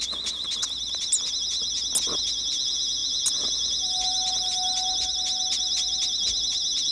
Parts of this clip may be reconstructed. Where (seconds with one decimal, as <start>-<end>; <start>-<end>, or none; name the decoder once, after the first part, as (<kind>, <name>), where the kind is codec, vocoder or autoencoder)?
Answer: none